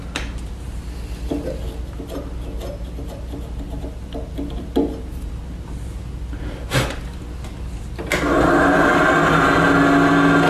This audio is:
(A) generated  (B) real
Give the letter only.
B